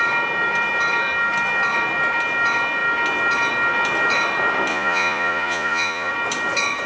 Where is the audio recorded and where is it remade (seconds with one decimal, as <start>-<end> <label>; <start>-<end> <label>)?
0.0-4.7 recorded; 4.7-6.1 remade; 6.1-6.9 recorded